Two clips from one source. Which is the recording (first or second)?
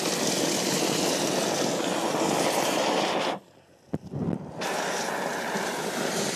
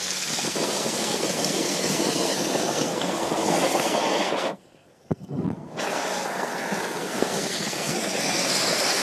first